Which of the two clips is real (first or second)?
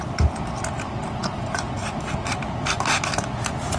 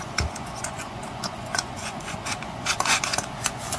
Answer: first